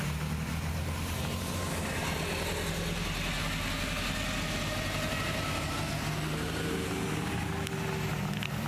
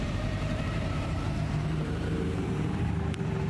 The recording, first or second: first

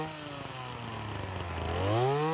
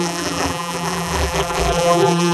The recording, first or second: first